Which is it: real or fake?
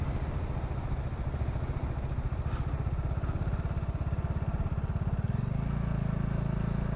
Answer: real